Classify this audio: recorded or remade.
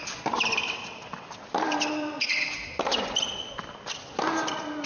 recorded